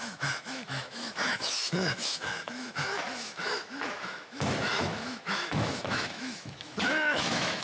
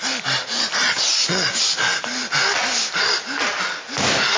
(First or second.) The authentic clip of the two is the second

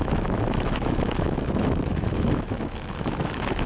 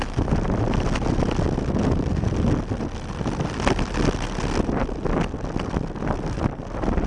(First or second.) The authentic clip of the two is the second